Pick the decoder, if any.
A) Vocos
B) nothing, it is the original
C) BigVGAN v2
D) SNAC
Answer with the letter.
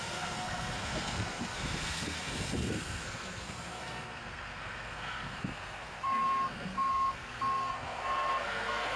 D